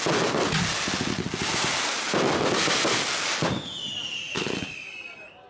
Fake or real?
real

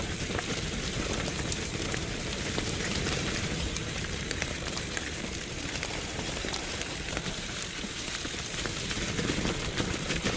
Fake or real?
fake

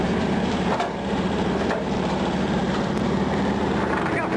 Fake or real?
fake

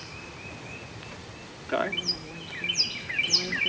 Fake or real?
fake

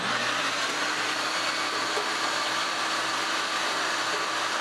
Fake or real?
real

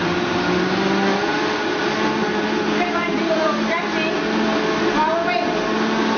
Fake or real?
real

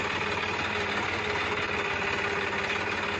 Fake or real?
real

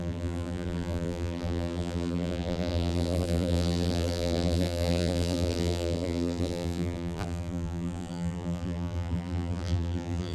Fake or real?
fake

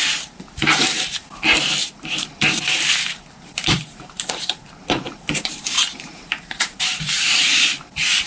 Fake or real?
fake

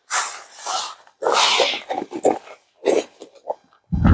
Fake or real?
real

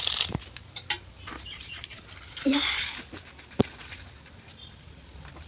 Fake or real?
fake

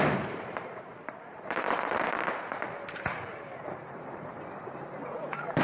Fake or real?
fake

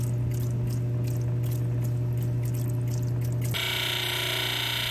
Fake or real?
real